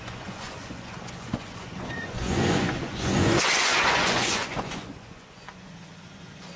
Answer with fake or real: fake